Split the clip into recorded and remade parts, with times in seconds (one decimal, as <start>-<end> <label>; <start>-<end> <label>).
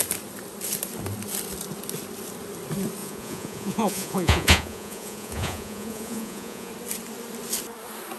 0.0-3.0 recorded; 3.0-6.7 remade; 6.7-8.2 recorded